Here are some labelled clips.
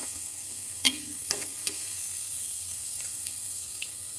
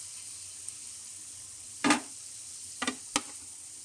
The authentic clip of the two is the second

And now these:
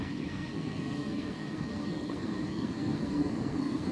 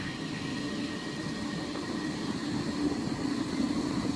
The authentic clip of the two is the second